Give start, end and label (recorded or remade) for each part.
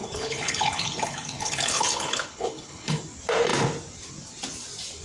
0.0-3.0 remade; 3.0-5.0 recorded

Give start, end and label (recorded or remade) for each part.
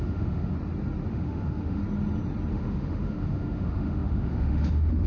0.0-0.5 remade; 0.5-1.1 recorded; 1.1-1.8 remade; 1.8-2.5 recorded; 2.5-5.1 remade